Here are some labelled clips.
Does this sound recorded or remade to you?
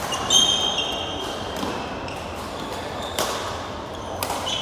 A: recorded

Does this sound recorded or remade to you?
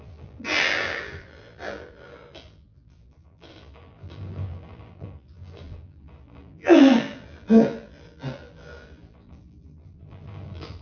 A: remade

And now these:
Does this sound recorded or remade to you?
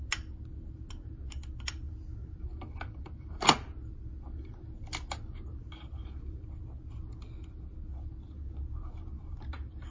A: recorded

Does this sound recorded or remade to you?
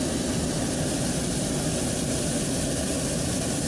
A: recorded